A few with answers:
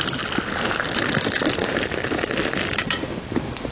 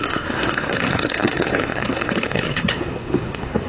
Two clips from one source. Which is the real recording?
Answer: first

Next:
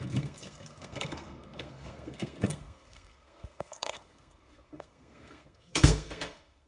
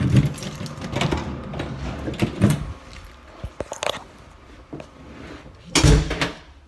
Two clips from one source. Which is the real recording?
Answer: second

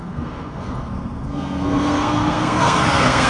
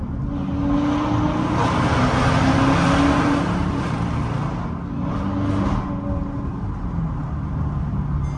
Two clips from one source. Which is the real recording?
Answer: second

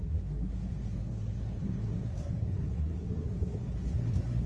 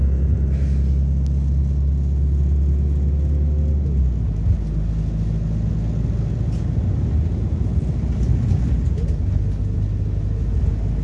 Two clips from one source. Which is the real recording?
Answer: second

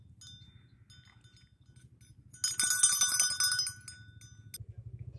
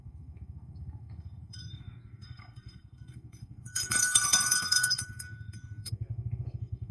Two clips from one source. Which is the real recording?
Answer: first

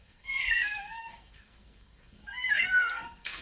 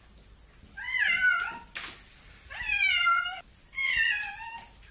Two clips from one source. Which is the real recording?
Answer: second